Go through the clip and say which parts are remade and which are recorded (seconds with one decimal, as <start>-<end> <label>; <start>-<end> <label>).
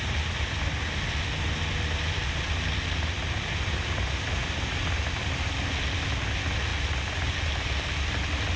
0.0-8.6 recorded